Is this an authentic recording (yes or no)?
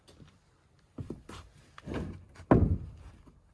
yes